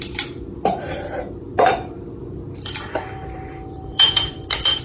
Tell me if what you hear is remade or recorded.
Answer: remade